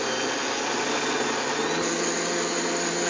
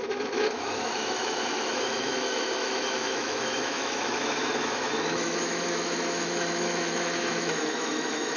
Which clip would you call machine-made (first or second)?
second